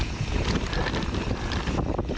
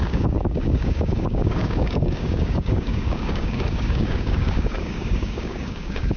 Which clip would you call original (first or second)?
first